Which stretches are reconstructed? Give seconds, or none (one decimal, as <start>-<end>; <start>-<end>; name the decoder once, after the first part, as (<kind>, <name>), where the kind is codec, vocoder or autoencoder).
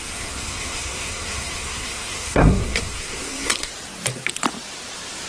0.0-3.7 (codec, SNAC)